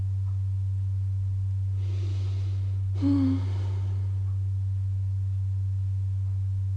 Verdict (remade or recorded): recorded